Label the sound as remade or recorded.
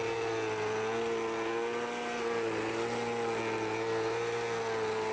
recorded